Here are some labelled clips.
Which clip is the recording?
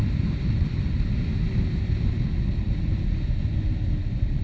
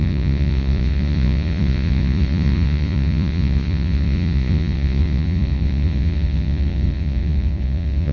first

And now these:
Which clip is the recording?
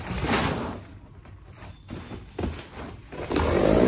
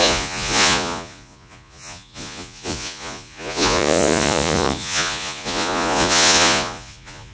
first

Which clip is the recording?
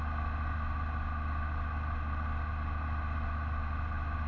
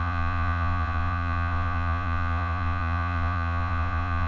first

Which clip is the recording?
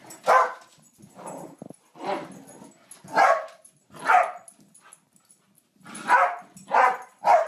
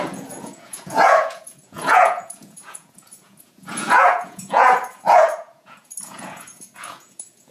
first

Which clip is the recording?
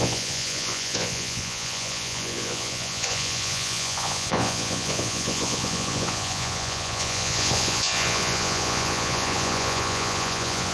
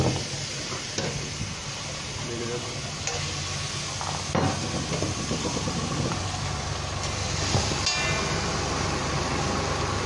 second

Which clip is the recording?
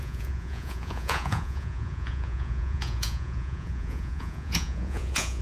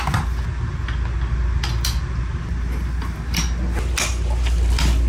second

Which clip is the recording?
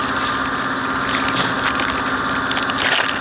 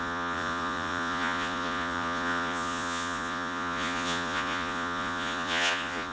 first